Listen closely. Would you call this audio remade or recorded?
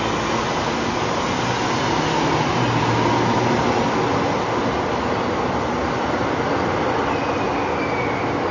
recorded